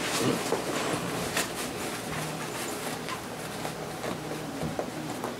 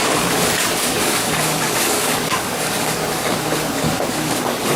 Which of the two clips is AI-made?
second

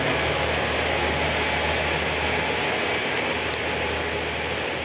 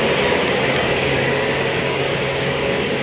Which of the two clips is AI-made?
second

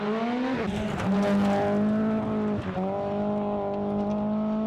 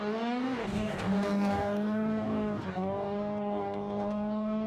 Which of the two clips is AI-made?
second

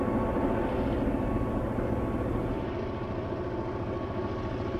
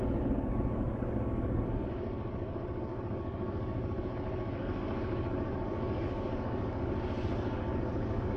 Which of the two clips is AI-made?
second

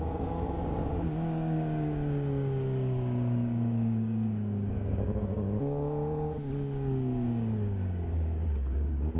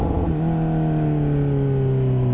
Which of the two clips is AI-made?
first